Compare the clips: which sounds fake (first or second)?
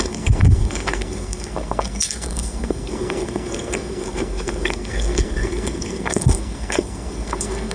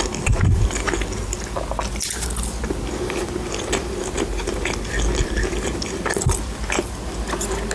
first